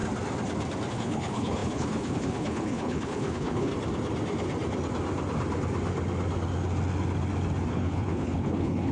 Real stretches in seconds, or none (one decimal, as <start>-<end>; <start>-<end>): 0.0-0.9; 3.7-7.7